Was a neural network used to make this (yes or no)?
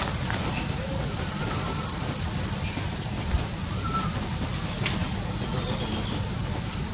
no